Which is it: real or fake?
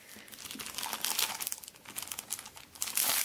real